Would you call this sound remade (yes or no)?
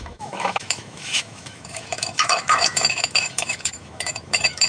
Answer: yes